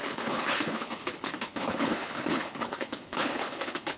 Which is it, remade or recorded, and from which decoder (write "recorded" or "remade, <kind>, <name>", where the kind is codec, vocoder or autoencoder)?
remade, codec, HILCodec